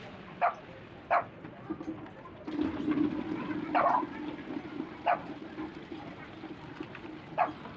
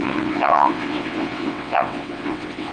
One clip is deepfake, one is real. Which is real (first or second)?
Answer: first